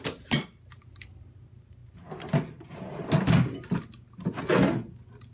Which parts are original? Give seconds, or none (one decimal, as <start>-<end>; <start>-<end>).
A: 0.0-5.3